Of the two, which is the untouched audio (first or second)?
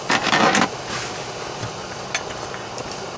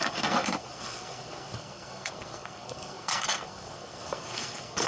first